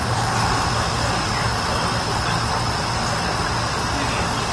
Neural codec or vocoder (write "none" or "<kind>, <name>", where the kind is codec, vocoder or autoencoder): none